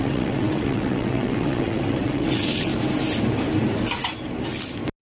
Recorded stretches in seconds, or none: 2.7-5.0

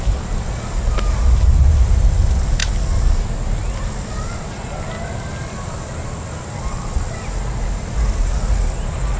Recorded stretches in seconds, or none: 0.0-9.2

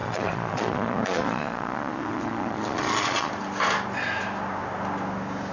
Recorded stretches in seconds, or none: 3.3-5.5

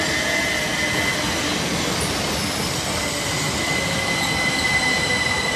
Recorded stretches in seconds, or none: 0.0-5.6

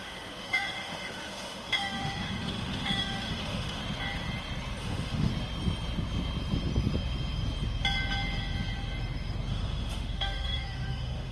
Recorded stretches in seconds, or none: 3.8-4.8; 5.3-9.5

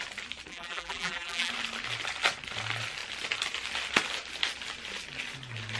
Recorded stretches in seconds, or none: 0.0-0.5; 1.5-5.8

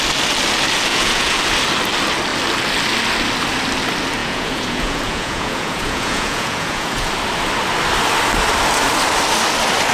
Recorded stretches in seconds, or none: 0.0-0.9; 1.4-4.2; 7.1-9.9

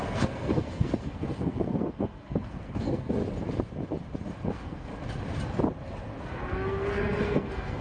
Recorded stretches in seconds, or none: 3.2-4.5; 4.9-6.2